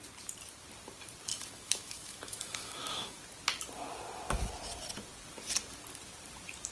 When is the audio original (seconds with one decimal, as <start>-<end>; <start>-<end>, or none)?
0.0-1.3; 3.2-6.7

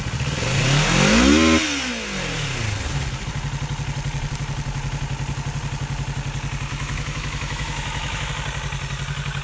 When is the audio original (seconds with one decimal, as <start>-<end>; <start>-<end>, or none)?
0.0-6.7; 8.3-9.4

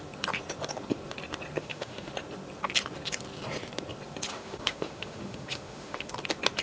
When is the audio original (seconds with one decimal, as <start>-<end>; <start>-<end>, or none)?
0.0-1.6; 2.1-4.3; 6.1-6.6

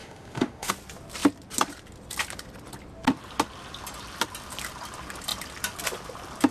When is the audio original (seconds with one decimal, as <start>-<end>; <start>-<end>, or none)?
0.7-6.5

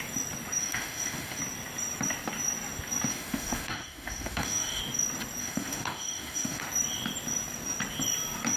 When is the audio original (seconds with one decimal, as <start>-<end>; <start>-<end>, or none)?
0.0-0.6; 1.4-3.1; 4.8-5.4; 6.6-8.6

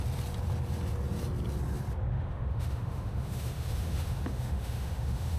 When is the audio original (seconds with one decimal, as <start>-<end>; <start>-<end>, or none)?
0.0-2.1